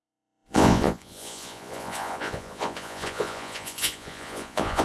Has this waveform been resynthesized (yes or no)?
yes